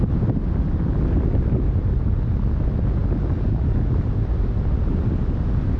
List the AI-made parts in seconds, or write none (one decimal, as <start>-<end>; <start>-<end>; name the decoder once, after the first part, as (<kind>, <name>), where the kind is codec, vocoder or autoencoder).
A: none